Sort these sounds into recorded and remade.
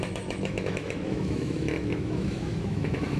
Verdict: remade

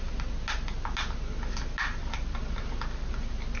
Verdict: recorded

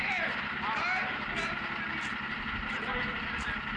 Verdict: recorded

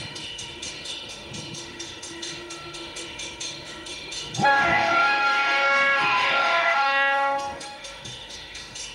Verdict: remade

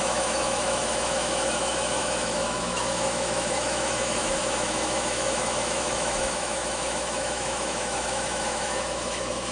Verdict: remade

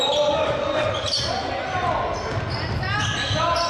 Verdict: recorded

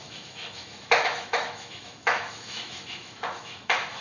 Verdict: remade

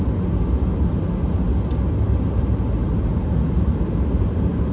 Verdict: recorded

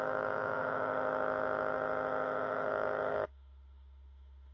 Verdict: remade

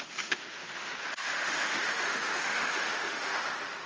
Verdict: remade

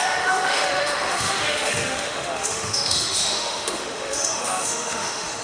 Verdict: remade